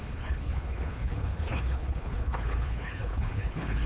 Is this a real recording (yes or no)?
no